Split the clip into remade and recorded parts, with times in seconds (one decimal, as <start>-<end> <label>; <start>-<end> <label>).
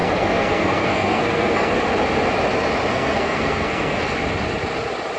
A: 0.0-1.7 remade; 1.7-2.9 recorded; 2.9-4.0 remade; 4.0-5.2 recorded